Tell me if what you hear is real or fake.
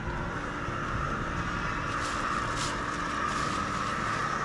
real